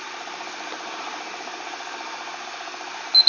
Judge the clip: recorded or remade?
recorded